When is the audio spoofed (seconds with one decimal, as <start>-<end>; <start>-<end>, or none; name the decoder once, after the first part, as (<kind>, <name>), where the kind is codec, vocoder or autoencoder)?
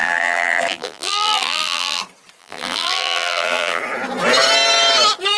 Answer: 0.0-2.0 (vocoder, BigVGAN v2); 2.4-3.8